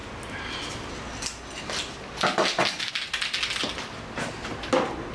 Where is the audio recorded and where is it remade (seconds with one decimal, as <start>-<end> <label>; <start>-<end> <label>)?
0.0-5.1 recorded